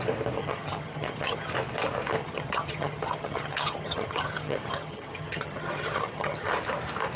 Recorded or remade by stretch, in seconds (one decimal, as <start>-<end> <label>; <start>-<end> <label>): 0.0-0.4 recorded; 0.4-1.5 remade; 1.5-2.2 recorded; 2.2-6.5 remade; 6.5-7.2 recorded